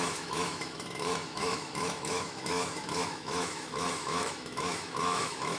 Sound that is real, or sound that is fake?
fake